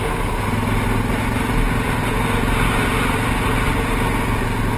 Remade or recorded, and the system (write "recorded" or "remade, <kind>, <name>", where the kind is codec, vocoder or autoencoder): recorded